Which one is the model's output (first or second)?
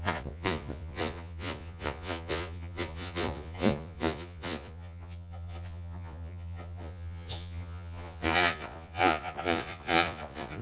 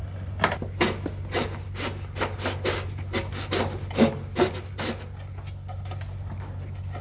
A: first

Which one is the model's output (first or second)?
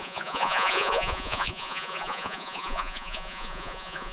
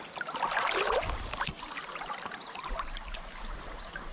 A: first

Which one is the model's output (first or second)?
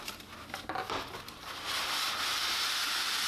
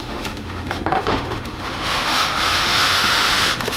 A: second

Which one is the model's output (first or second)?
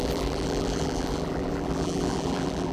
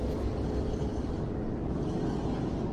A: first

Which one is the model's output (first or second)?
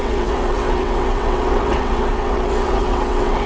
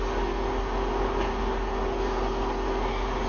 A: first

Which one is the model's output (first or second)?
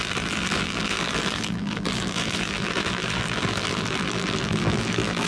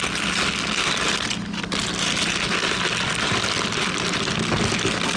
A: first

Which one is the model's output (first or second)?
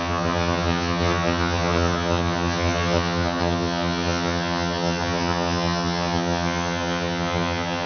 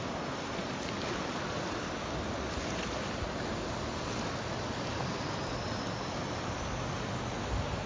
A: first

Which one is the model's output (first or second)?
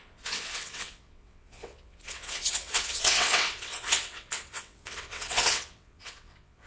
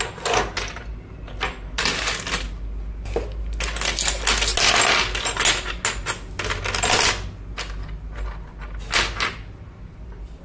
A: first